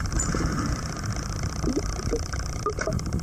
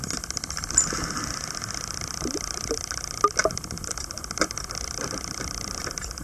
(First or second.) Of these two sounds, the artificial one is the first